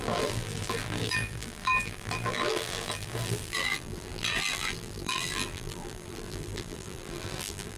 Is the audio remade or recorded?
remade